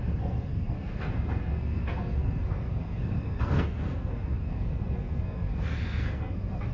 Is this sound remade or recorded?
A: remade